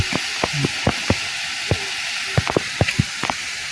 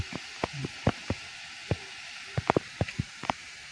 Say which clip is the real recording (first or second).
first